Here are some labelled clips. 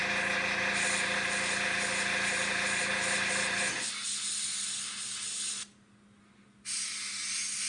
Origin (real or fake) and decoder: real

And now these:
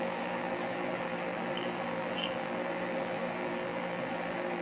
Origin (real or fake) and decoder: fake, vocoder, BigVGAN v2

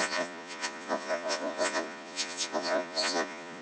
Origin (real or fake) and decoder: fake, vocoder, Vocos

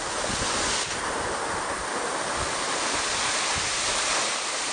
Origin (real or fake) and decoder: real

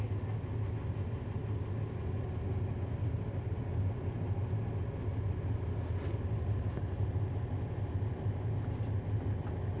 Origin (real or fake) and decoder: real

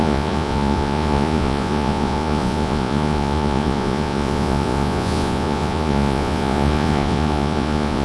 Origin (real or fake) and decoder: fake, vocoder, Vocos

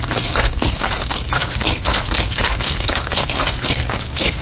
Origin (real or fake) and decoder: fake, codec, SNAC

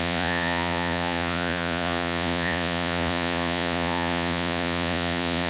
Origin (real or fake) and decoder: fake, vocoder, Vocos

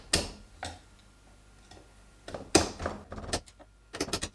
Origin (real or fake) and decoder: real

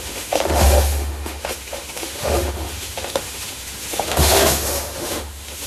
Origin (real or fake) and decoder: fake, autoencoder, DAC-VAE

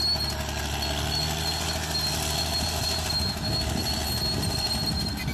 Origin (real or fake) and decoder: real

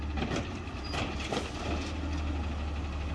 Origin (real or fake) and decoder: real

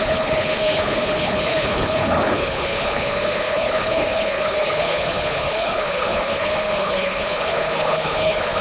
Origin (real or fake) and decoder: fake, codec, HILCodec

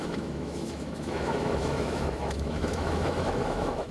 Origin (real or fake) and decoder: fake, autoencoder, DAC-VAE